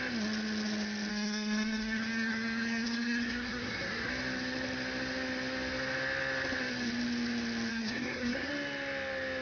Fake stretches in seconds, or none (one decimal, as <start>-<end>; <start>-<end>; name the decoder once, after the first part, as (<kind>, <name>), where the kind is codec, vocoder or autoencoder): 1.1-4.1 (codec, SNAC); 7.7-8.5